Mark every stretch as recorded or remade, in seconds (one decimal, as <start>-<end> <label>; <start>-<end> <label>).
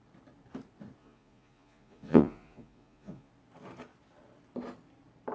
0.0-1.0 recorded; 1.0-3.3 remade; 3.3-5.3 recorded